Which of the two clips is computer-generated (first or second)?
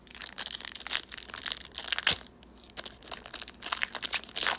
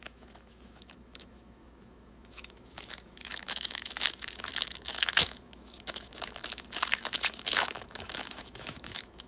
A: second